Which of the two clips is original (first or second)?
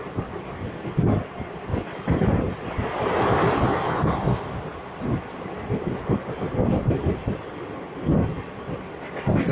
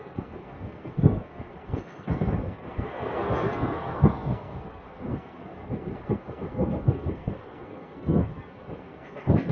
first